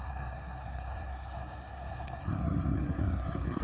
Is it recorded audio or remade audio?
remade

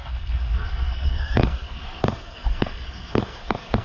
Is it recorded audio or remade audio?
remade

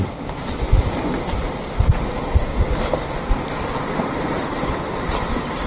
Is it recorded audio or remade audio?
recorded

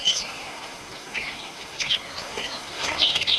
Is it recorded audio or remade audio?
remade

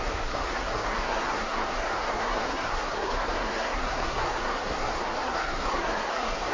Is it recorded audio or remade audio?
remade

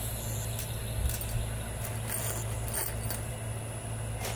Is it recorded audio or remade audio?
recorded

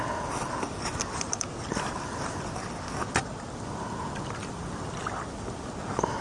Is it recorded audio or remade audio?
recorded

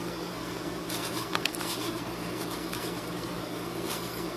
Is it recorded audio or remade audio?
remade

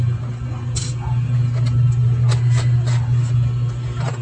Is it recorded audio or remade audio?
recorded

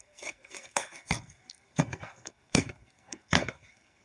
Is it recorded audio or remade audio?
remade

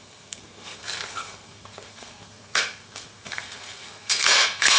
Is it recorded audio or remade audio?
remade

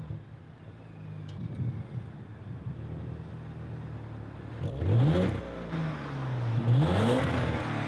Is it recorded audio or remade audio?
recorded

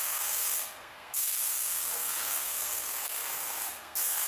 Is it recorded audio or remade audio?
remade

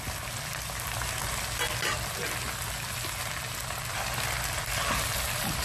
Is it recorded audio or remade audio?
recorded